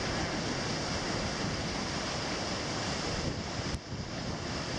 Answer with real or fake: real